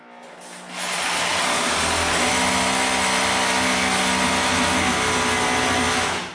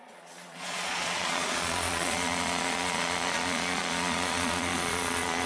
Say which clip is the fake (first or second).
second